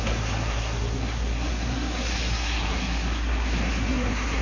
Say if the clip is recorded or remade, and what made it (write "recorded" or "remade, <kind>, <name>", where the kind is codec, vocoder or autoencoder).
remade, codec, SNAC